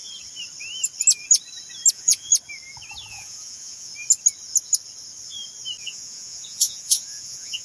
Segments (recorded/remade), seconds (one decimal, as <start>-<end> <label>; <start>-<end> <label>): 0.0-1.9 recorded; 1.9-2.3 remade; 2.3-3.1 recorded; 3.1-3.9 remade; 3.9-5.8 recorded; 5.8-7.6 remade